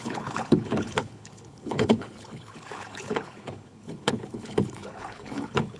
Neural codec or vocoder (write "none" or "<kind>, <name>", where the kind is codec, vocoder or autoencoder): codec, HILCodec